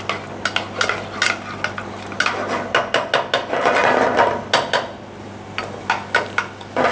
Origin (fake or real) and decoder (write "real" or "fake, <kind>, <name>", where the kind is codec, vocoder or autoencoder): real